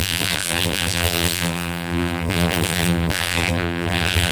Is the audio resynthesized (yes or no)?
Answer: yes